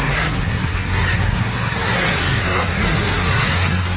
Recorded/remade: remade